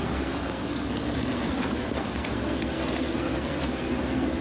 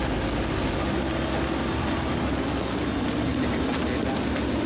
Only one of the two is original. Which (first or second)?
second